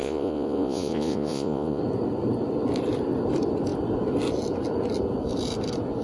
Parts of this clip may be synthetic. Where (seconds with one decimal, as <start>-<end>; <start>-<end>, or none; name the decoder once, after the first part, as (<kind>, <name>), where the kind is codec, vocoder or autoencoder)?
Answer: 0.0-1.8 (vocoder, Vocos)